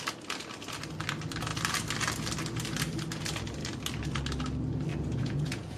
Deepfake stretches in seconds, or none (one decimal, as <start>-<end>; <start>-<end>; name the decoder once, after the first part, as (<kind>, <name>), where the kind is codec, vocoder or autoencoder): 4.9-5.8 (vocoder, Vocos)